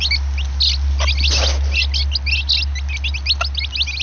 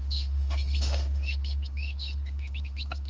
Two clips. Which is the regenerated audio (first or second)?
second